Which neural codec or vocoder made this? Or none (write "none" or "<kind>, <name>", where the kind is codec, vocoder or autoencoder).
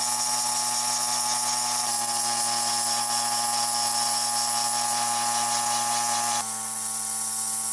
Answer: none